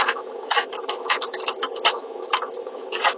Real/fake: fake